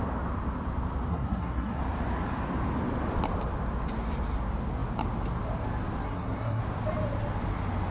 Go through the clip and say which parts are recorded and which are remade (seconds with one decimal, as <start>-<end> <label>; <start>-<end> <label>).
0.0-1.1 recorded; 1.1-1.8 remade; 1.8-6.0 recorded; 6.0-6.6 remade; 6.6-7.9 recorded